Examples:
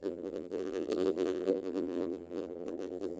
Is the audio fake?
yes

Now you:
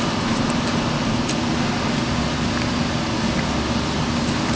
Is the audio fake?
no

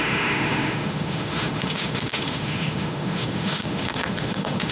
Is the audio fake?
yes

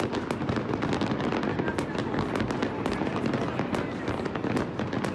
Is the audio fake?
no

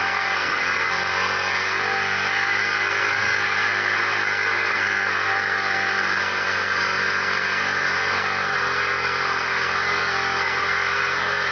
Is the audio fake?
yes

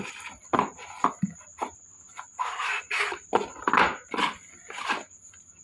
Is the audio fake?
no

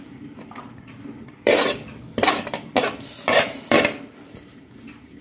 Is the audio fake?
yes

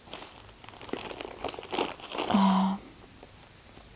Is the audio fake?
no